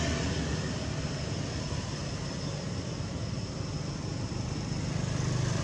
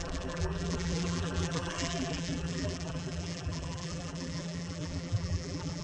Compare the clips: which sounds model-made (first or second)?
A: second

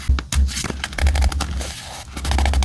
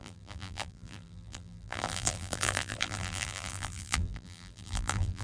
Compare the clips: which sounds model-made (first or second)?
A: second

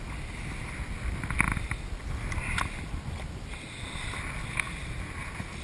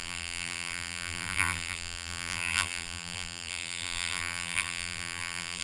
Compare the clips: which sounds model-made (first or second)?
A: second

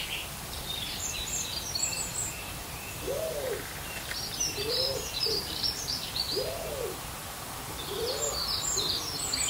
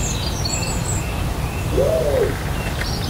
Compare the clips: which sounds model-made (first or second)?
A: first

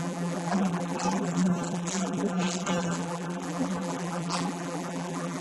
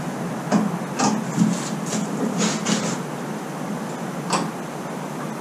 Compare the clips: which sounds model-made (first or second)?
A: first